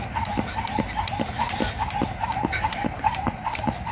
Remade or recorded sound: recorded